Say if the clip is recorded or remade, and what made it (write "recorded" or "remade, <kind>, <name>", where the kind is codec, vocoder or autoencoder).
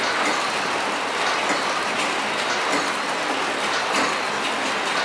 recorded